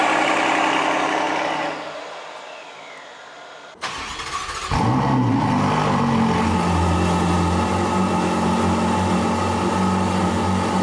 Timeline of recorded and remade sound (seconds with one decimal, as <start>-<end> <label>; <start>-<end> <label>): 0.0-10.8 recorded